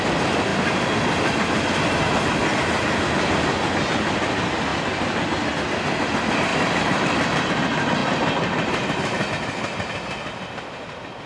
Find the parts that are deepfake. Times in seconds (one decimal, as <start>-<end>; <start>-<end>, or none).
6.5-7.5; 8.0-9.3

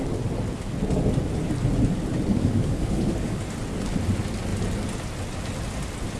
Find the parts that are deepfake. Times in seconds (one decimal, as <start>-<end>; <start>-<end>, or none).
2.3-3.4

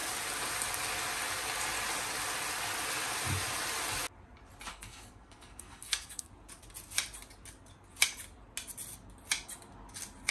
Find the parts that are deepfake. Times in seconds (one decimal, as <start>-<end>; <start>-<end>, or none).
4.7-6.3

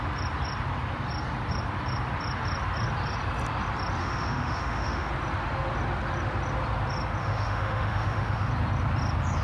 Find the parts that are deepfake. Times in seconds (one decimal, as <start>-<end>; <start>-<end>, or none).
4.0-5.1; 7.2-8.5

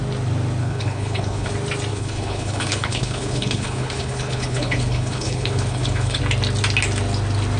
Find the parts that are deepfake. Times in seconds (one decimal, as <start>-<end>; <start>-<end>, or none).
0.6-1.5; 1.9-6.2